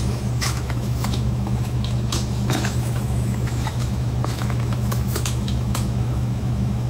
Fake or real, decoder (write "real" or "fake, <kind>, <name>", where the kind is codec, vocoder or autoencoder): fake, autoencoder, DAC-VAE